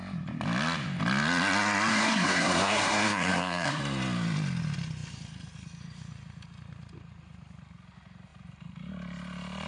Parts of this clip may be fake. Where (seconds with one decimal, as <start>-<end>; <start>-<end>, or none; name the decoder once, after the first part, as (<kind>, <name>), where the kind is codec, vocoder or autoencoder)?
1.9-3.8 (codec, SNAC)

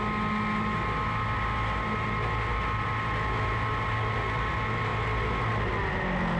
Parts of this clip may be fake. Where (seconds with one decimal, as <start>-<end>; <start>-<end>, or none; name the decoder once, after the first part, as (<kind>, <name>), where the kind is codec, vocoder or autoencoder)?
none

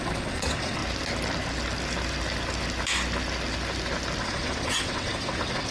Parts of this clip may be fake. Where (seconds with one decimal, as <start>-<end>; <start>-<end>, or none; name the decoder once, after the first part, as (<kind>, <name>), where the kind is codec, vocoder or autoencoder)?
0.0-0.8 (vocoder, WaveNeXt); 4.2-5.7

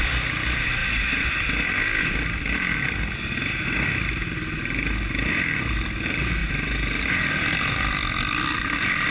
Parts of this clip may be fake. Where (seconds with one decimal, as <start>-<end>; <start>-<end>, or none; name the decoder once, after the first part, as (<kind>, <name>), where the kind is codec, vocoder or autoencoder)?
none

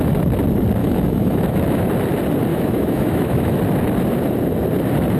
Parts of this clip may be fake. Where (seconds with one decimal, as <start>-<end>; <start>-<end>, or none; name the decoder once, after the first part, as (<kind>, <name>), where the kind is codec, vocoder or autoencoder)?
0.8-1.8 (autoencoder, DAC-VAE); 2.5-3.6